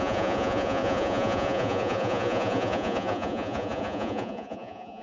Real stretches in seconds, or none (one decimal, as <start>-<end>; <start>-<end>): none